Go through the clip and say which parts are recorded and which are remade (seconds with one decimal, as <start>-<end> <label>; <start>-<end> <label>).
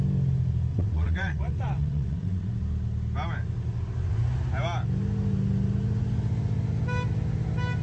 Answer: 0.0-0.7 recorded; 0.7-2.5 remade; 2.5-7.8 recorded